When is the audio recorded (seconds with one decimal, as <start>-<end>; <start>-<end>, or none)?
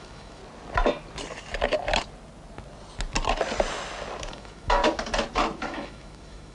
0.4-4.3; 4.8-5.6